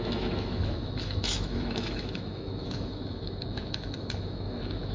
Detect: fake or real fake